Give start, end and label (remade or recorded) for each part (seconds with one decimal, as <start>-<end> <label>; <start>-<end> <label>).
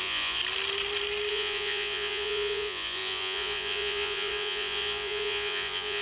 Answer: 0.0-0.4 remade; 0.4-1.3 recorded; 1.3-6.0 remade